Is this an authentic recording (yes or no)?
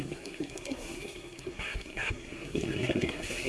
no